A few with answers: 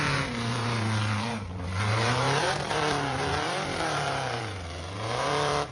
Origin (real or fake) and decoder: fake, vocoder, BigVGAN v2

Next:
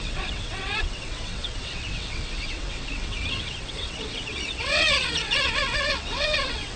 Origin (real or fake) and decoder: fake, vocoder, WaveNeXt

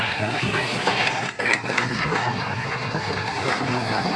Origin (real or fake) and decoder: fake, codec, SNAC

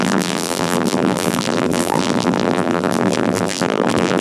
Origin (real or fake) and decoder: fake, vocoder, BigVGAN v2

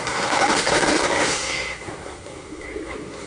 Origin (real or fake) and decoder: fake, codec, SNAC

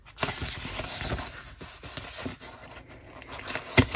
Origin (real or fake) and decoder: real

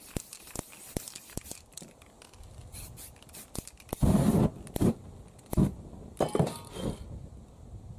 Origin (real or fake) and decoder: real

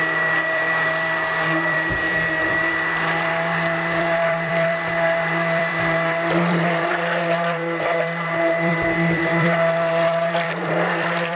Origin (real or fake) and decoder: fake, vocoder, BigVGAN v2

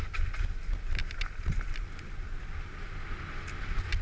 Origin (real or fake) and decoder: real